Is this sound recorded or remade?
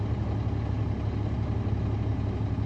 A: recorded